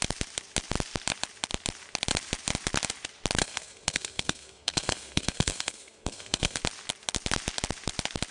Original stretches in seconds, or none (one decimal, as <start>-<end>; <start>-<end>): 0.0-3.4; 6.6-8.3